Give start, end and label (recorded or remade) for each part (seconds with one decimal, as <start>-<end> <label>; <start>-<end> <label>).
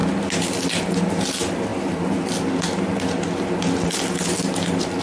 0.0-5.0 recorded